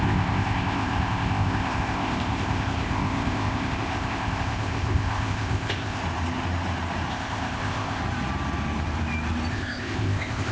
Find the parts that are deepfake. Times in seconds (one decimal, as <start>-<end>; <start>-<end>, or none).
0.0-6.0; 7.1-8.0; 9.5-10.5